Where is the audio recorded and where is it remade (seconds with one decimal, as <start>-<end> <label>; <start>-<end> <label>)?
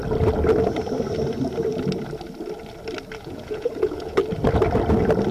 0.0-3.2 recorded; 3.2-4.2 remade; 4.2-5.3 recorded